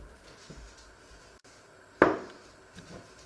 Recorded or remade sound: recorded